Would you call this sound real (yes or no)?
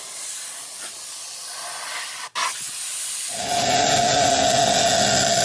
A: yes